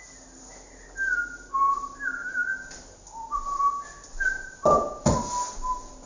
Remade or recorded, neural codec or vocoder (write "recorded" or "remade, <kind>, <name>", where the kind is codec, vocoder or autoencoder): recorded